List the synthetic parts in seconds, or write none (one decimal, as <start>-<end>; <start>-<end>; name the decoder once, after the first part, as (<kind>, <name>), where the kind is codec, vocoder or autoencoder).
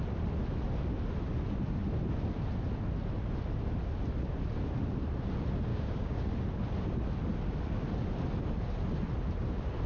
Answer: 5.7-6.3 (codec, DAC)